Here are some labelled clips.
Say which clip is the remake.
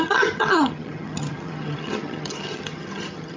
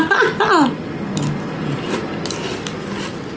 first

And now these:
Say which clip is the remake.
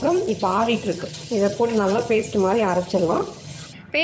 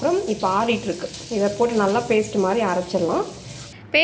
first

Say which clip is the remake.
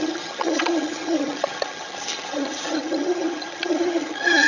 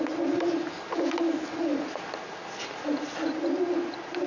first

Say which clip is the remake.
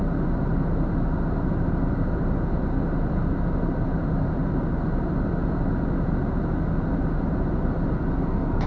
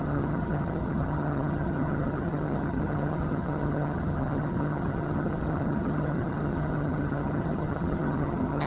second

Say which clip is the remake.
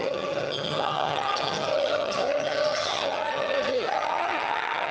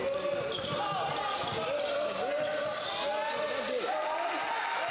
first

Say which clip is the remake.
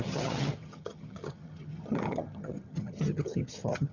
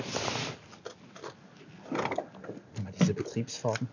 first